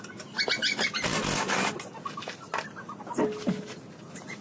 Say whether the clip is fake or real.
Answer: real